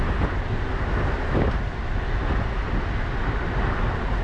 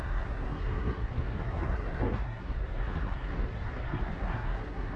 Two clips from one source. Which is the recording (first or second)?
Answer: first